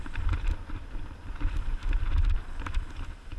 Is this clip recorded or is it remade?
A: recorded